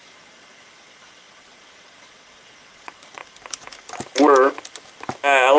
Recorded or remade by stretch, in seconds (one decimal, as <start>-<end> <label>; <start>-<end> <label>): 0.0-3.2 remade; 3.2-5.6 recorded